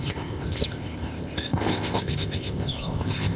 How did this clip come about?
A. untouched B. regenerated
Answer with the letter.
B